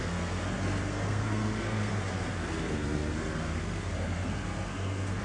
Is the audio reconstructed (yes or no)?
yes